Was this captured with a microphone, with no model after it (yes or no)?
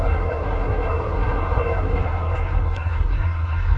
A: no